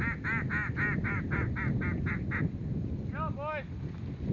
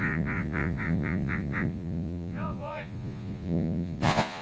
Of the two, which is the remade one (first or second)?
second